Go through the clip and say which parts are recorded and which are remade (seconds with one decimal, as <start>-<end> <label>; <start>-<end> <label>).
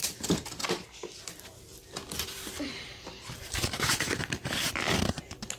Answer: 0.0-3.4 remade; 3.4-5.6 recorded